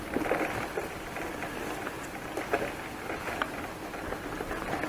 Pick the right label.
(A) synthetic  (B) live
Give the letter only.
B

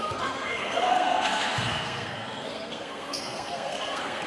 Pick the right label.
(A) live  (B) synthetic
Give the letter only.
B